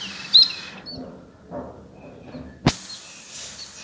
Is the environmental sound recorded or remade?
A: recorded